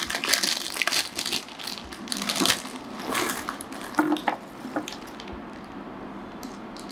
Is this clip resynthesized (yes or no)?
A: no